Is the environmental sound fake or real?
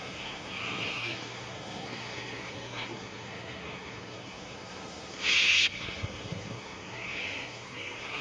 fake